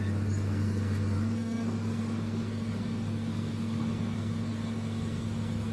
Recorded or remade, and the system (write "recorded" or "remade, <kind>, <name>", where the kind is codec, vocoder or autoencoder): remade, codec, SNAC